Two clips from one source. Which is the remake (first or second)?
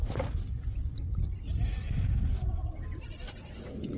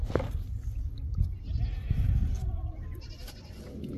first